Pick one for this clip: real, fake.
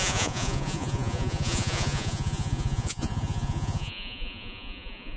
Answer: fake